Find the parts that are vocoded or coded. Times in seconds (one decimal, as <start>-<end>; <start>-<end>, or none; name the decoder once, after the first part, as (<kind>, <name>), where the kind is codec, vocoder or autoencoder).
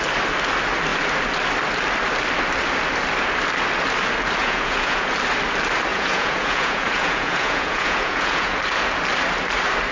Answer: 4.4-5.1 (vocoder, Vocos); 5.9-8.6